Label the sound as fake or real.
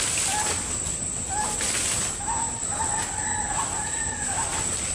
real